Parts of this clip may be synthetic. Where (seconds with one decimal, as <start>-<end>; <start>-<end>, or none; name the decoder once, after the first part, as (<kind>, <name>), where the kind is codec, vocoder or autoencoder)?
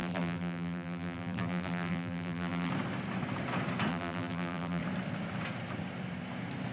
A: 0.0-2.7 (vocoder, BigVGAN v2); 3.9-4.8